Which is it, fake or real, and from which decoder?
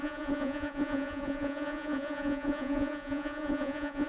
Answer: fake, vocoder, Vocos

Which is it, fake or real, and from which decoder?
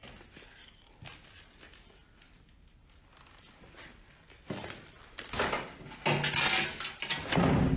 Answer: real